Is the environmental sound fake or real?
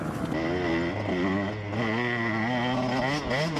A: real